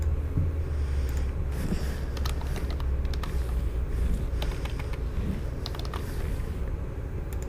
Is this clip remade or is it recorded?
recorded